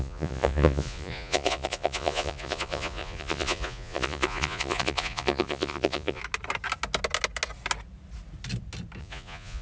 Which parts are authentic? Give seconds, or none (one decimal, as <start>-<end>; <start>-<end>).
6.2-9.0